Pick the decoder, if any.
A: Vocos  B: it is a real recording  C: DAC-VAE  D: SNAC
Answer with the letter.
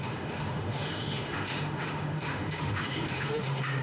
C